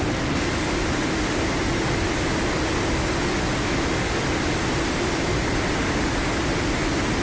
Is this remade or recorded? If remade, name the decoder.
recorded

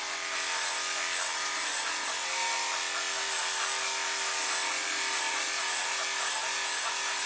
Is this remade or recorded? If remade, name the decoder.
recorded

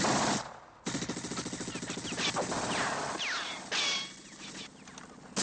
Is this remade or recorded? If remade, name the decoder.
recorded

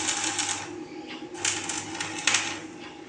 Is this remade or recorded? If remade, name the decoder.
recorded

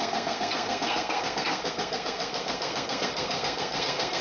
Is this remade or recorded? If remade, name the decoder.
remade, codec, SNAC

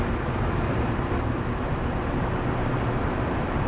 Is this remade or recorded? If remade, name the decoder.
remade, vocoder, BigVGAN v2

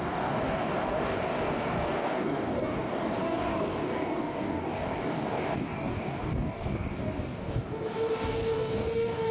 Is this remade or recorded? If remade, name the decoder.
remade, codec, DAC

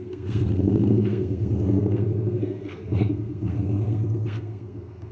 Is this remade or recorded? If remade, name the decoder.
remade, codec, SNAC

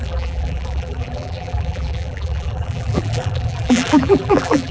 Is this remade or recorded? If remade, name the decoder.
remade, vocoder, BigVGAN v2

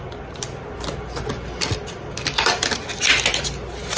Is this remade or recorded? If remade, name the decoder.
recorded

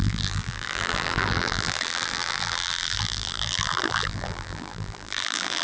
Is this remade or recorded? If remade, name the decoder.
remade, vocoder, BigVGAN v2